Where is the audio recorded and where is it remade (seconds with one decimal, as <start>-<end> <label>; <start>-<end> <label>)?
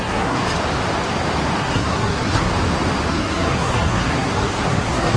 0.0-0.4 remade; 0.4-1.6 recorded; 1.6-2.5 remade; 2.5-3.1 recorded; 3.1-5.2 remade